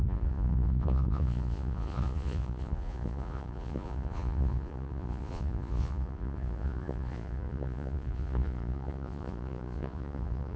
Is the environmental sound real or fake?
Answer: fake